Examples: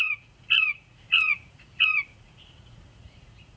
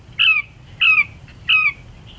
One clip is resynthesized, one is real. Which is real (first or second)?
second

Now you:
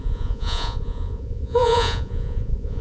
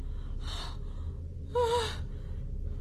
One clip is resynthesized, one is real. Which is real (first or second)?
second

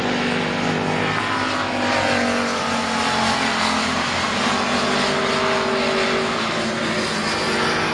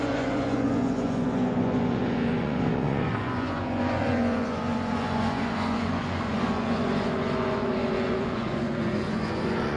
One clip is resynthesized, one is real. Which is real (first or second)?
first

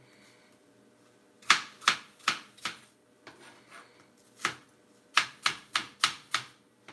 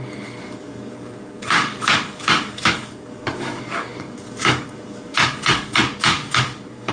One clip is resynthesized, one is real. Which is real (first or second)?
first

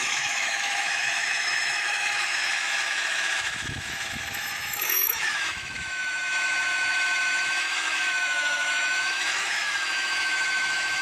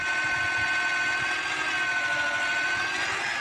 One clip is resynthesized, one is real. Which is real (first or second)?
second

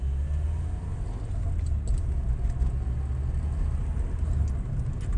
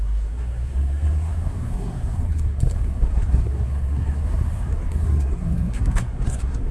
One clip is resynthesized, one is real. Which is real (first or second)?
first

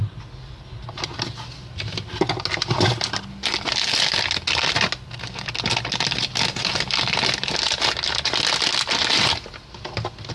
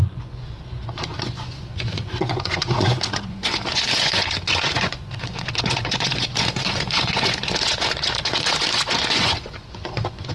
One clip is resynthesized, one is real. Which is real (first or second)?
first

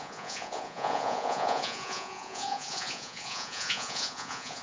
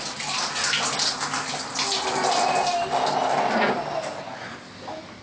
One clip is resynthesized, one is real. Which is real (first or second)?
second